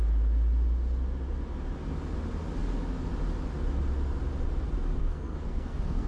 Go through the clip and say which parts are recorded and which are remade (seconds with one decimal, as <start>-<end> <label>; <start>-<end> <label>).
0.0-5.0 recorded; 5.0-6.1 remade